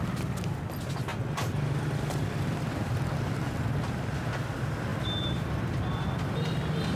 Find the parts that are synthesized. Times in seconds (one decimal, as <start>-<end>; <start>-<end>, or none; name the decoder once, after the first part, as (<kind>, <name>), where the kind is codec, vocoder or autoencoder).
1.1-4.4 (vocoder, BigVGAN v2); 4.9-6.5